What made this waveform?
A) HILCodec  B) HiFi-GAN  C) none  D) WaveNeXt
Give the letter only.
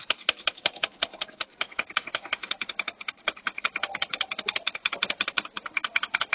C